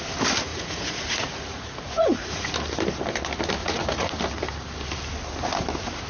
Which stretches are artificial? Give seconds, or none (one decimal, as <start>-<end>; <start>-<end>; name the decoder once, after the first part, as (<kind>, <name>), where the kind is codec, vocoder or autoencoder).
0.5-2.5 (vocoder, Vocos); 3.6-4.2